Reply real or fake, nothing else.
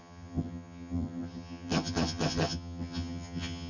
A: fake